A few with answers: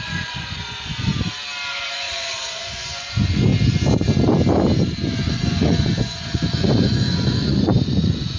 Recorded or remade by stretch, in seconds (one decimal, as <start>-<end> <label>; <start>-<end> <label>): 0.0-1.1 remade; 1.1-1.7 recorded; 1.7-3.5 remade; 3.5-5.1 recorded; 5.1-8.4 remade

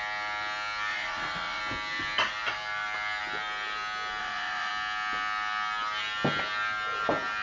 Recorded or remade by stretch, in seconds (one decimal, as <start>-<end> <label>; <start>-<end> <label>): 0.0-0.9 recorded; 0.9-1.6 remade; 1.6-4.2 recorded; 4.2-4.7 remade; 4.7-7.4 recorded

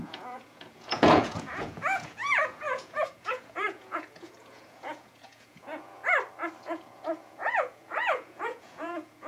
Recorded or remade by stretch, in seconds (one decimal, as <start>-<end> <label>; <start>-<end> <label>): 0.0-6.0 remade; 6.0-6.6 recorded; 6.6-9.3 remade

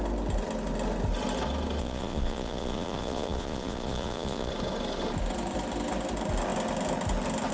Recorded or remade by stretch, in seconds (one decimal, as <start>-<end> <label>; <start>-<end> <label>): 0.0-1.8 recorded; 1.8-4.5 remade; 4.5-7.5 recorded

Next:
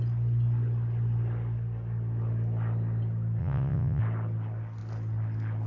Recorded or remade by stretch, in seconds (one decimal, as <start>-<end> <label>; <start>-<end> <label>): 0.0-3.4 recorded; 3.4-4.0 remade; 4.0-5.7 recorded

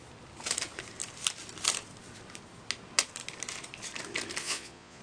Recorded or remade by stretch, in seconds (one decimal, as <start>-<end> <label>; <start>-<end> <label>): 0.0-4.4 recorded; 4.4-5.0 remade

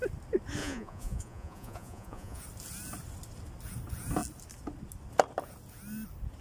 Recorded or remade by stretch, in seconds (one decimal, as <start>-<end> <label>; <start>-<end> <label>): 0.0-0.6 recorded; 0.6-2.4 remade; 2.4-6.4 recorded

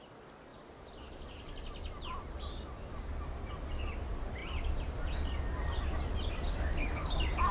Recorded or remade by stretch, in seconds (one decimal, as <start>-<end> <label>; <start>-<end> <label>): 0.0-7.5 recorded